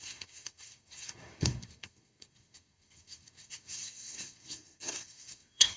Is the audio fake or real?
fake